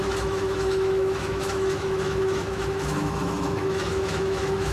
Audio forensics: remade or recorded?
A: remade